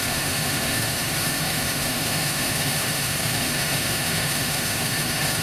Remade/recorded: remade